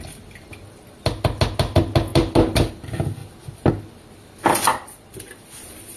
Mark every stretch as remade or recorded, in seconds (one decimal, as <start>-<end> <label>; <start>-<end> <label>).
0.0-6.0 recorded